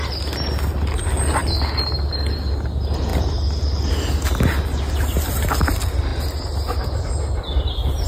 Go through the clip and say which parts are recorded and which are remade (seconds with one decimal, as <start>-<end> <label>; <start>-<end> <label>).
0.0-8.1 recorded